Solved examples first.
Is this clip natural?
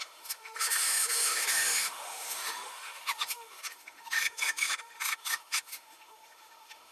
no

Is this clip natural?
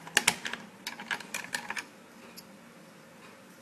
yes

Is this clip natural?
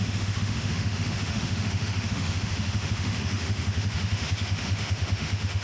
no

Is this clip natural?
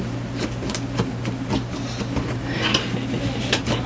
yes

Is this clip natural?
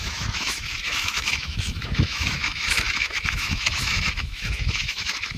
no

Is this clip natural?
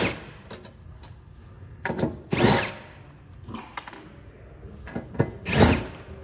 yes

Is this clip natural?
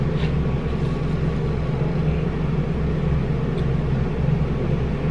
yes